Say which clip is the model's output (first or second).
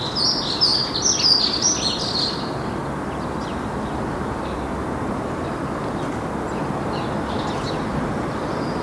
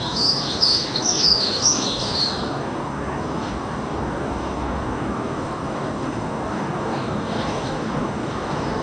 second